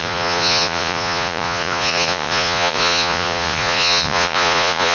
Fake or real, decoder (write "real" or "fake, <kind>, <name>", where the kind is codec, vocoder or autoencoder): fake, vocoder, Vocos